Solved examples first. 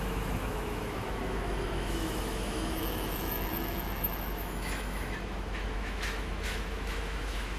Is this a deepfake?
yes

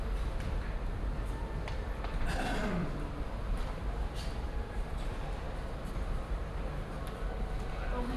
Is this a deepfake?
no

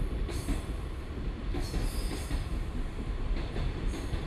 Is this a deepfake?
no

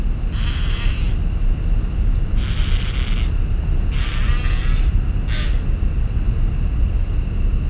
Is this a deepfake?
no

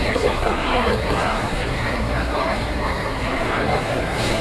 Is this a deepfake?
yes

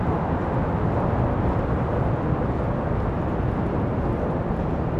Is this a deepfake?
no